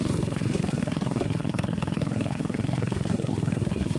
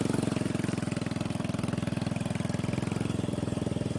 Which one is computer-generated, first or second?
first